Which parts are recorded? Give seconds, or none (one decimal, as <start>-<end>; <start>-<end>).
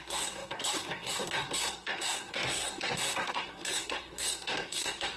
none